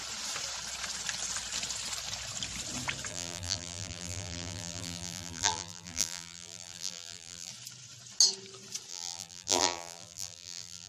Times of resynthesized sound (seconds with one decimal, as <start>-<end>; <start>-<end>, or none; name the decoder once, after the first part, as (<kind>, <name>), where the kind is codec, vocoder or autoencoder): 3.1-7.5 (vocoder, BigVGAN v2); 8.9-10.9